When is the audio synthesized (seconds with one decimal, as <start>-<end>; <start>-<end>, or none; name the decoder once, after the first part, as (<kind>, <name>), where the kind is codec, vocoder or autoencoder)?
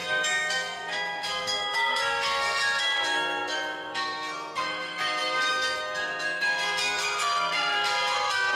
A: 0.0-8.5 (codec, SNAC)